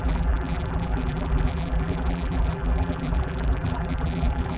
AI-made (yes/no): yes